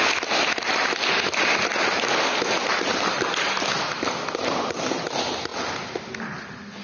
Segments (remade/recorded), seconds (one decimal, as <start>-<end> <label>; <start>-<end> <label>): 0.0-6.8 recorded